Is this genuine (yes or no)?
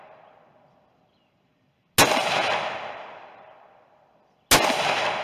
yes